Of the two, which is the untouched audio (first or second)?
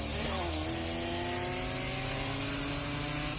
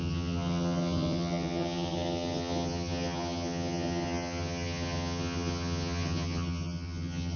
first